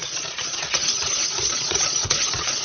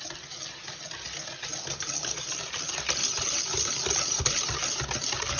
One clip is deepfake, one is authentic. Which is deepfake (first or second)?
first